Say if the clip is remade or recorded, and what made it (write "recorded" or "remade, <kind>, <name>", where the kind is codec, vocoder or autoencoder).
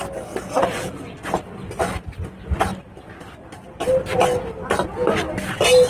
recorded